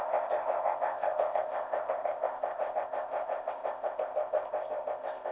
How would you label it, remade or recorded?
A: remade